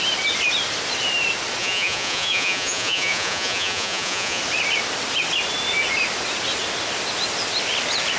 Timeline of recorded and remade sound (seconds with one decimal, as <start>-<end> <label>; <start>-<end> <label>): 0.0-1.6 recorded; 1.6-4.4 remade; 4.4-8.2 recorded